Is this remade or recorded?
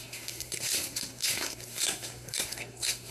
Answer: remade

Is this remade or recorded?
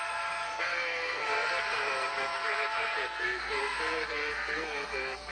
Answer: remade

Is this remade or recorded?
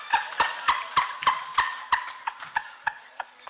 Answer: remade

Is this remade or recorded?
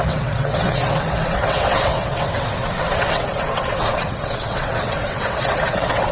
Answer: remade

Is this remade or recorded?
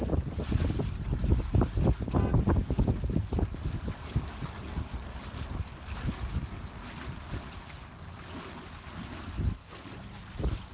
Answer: recorded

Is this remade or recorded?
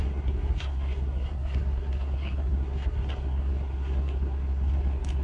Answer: remade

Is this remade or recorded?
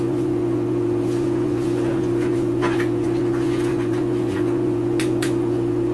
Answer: remade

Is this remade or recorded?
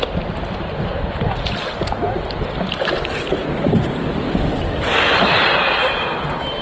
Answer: recorded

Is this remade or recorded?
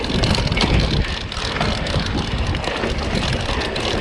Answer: recorded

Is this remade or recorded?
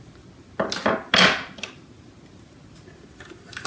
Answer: recorded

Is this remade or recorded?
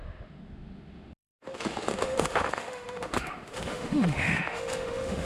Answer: remade